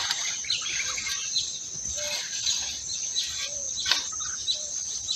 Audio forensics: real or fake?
fake